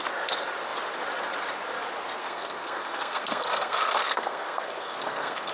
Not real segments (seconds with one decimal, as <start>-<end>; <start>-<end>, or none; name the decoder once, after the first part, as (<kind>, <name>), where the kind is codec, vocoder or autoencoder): 2.2-5.5 (codec, SNAC)